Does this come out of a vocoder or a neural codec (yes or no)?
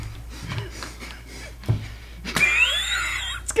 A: no